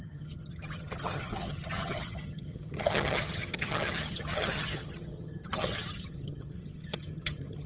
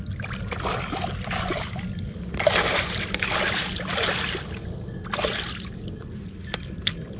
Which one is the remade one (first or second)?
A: first